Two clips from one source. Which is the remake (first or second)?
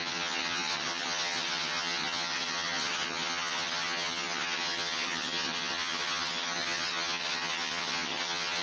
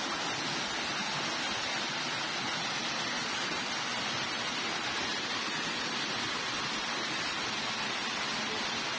first